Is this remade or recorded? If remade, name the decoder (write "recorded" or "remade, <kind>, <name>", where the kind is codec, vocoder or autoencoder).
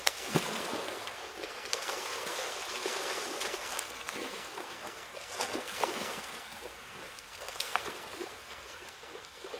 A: remade, codec, SNAC